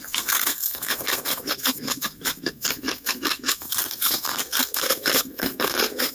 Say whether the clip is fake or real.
fake